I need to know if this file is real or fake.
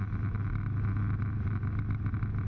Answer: real